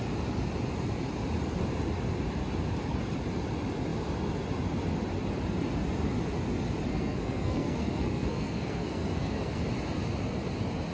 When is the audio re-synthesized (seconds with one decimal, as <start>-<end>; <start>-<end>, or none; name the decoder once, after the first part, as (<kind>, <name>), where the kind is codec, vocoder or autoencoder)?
6.9-9.6 (codec, SNAC)